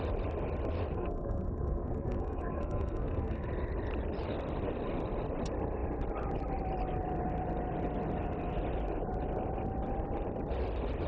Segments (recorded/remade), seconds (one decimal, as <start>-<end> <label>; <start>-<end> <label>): 0.0-0.9 recorded; 0.9-3.5 remade; 3.5-11.1 recorded